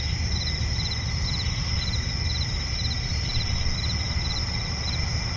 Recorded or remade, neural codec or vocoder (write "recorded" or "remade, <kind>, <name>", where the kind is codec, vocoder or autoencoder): recorded